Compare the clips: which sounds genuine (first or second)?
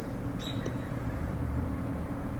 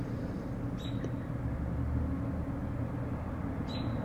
second